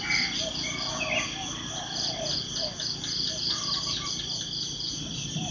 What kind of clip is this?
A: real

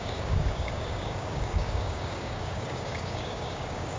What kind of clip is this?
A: fake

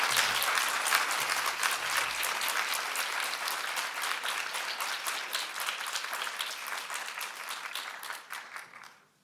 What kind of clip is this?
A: real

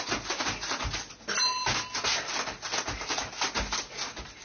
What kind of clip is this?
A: real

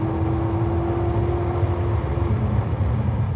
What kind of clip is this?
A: real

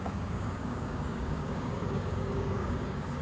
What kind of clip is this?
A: fake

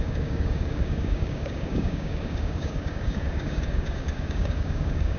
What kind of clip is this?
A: fake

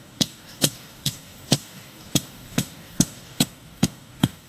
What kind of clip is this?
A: fake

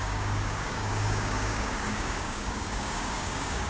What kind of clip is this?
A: fake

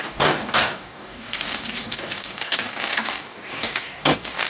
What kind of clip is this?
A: fake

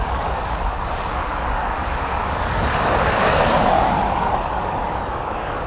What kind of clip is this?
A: fake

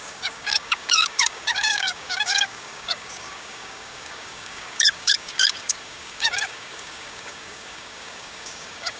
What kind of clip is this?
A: fake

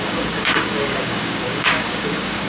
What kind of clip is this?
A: fake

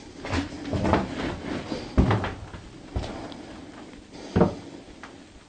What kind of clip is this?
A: real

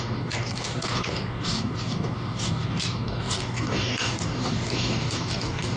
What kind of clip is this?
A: fake